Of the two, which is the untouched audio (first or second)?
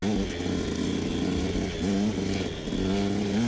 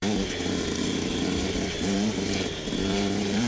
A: first